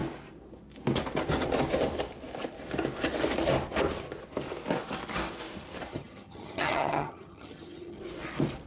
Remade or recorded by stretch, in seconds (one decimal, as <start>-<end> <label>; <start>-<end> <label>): 0.0-5.9 recorded; 5.9-8.0 remade; 8.0-8.7 recorded

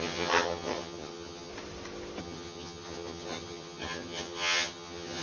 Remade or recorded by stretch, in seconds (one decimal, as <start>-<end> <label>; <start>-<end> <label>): 0.0-1.5 remade; 1.5-2.2 recorded; 2.2-5.2 remade

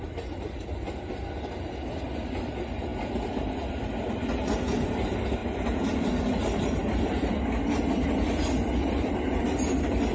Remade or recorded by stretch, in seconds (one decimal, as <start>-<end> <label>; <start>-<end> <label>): 0.0-10.1 recorded

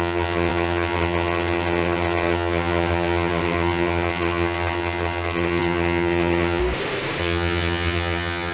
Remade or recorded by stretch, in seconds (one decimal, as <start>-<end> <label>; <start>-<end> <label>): 0.0-6.6 remade; 6.6-7.2 recorded; 7.2-8.5 remade

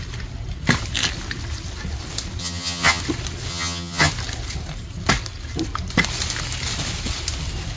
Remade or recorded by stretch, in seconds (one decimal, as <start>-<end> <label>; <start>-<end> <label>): 0.0-2.4 recorded; 2.4-3.0 remade; 3.0-3.5 recorded; 3.5-4.1 remade; 4.1-7.8 recorded